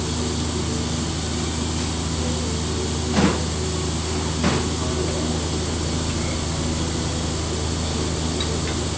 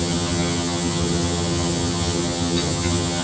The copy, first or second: second